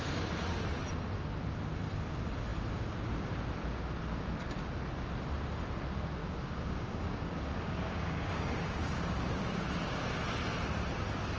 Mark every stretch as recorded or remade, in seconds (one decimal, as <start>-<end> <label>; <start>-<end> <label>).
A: 0.0-6.2 recorded; 6.2-9.7 remade; 9.7-11.4 recorded